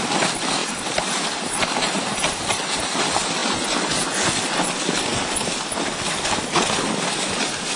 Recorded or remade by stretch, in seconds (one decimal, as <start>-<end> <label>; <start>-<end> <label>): 0.0-0.6 recorded; 0.6-3.0 remade; 3.0-7.8 recorded